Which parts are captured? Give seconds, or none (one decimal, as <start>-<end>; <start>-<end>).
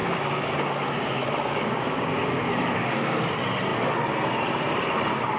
3.2-5.4